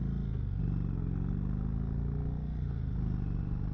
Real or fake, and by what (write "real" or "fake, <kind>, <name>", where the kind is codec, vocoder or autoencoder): real